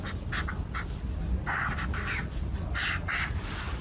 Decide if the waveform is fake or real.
real